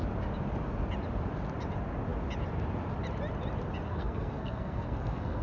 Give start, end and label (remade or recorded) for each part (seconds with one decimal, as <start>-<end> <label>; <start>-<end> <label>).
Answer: 0.0-3.9 recorded; 3.9-5.4 remade